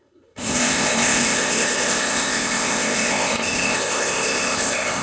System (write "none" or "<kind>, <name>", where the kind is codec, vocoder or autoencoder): codec, ZipCodec